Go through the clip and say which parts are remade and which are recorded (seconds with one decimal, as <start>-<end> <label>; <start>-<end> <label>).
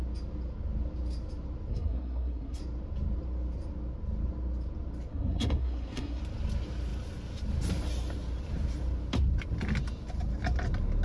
0.0-1.7 recorded; 1.7-2.6 remade; 2.6-5.1 recorded; 5.1-6.2 remade; 6.2-11.0 recorded